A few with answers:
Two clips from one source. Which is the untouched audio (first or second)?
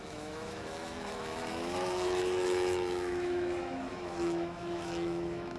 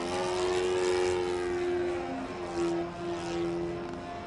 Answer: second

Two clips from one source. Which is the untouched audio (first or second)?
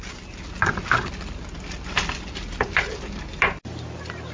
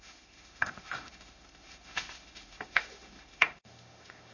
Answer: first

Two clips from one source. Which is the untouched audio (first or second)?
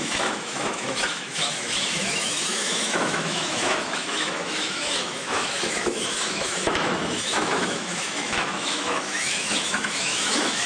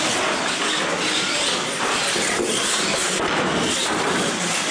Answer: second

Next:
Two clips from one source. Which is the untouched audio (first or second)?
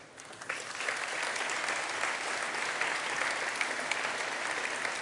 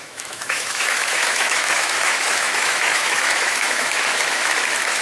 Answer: first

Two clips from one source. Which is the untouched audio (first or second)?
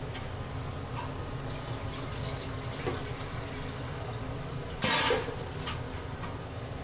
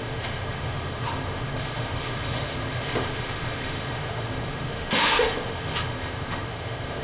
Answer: first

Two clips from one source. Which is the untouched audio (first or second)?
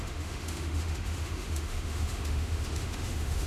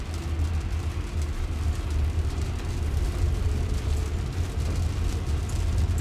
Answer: second